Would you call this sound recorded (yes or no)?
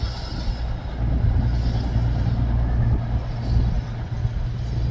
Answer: yes